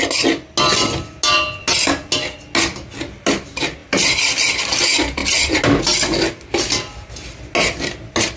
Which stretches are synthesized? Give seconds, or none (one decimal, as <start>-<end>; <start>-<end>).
none